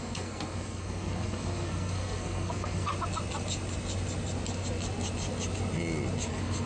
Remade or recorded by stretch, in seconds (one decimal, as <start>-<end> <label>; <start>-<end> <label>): 0.0-2.9 remade; 2.9-6.3 recorded; 6.3-6.7 remade